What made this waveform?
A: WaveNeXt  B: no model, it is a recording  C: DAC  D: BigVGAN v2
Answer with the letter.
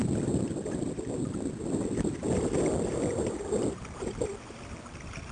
B